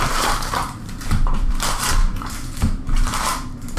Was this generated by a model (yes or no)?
yes